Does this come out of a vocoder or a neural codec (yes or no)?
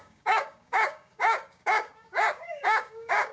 yes